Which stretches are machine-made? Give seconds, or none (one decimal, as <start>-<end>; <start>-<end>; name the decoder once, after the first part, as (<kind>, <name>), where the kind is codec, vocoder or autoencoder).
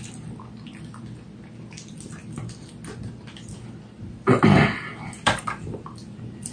none